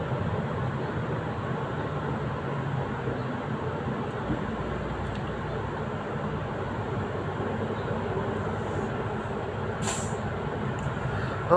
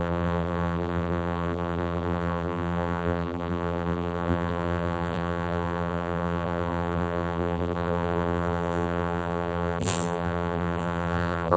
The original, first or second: first